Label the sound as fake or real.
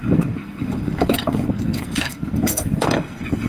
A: fake